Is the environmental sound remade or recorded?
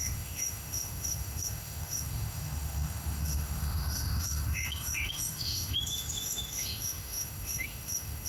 remade